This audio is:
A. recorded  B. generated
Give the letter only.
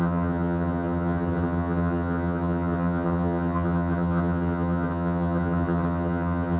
B